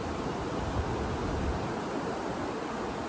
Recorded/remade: recorded